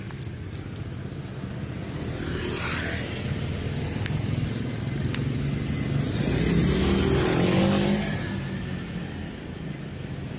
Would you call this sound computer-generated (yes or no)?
no